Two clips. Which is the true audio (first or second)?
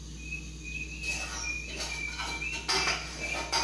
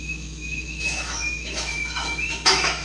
first